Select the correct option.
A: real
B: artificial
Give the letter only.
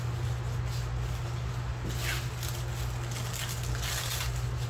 A